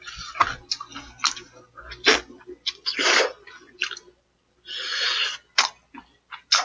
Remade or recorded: recorded